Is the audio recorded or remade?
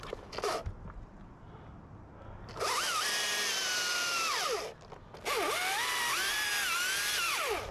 recorded